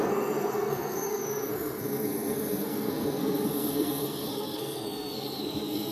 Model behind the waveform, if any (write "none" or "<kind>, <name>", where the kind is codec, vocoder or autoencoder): codec, SNAC